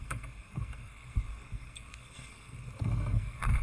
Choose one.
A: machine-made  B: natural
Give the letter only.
A